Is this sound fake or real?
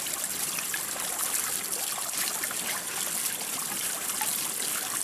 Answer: real